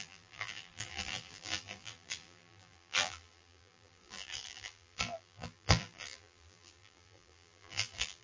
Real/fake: fake